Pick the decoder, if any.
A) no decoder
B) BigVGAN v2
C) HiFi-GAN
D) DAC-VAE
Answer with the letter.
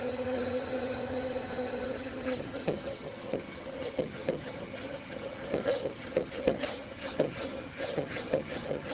C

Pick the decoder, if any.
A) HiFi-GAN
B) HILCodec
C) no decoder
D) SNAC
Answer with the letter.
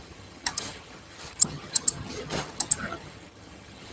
A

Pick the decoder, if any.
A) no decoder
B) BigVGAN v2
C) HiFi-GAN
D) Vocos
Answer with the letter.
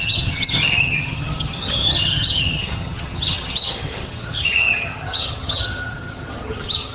C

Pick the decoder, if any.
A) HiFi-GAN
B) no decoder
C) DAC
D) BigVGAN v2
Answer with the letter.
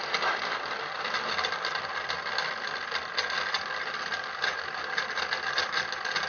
B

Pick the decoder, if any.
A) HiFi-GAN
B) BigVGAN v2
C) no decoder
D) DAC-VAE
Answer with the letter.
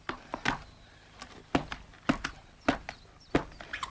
C